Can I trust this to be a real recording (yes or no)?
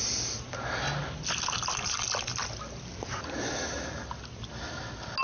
yes